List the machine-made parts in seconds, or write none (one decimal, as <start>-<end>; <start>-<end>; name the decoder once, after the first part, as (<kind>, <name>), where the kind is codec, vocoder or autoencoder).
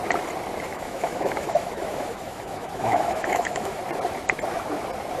0.7-3.8 (autoencoder, DAC-VAE)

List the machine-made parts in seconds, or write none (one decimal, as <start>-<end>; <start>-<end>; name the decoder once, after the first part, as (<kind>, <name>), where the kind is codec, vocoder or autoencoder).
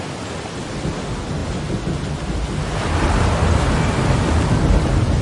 none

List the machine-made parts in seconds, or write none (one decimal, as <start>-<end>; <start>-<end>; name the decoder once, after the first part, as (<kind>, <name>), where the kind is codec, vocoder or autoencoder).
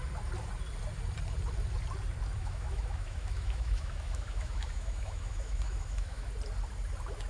2.4-6.3 (autoencoder, DAC-VAE)